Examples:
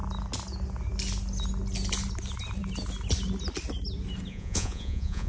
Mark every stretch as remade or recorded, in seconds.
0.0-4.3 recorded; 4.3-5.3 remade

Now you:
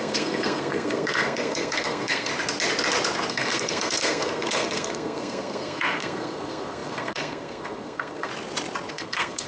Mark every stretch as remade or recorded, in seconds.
0.0-2.3 remade; 2.3-3.3 recorded; 3.3-8.3 remade; 8.3-8.9 recorded; 8.9-9.5 remade